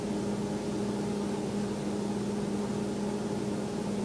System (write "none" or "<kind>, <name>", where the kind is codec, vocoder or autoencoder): none